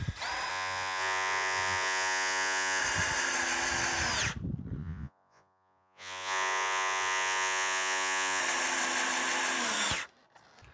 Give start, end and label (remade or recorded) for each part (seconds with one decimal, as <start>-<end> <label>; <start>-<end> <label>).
0.0-0.5 recorded; 0.5-2.8 remade; 2.8-4.8 recorded; 4.8-8.4 remade; 8.4-10.7 recorded